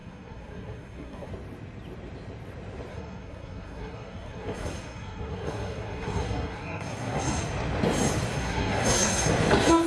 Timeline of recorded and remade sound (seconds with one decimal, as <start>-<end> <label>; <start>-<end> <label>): 0.0-1.3 remade; 1.3-2.9 recorded; 2.9-7.4 remade; 7.4-8.3 recorded; 8.3-9.3 remade; 9.3-9.9 recorded